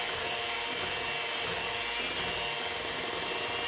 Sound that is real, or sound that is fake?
real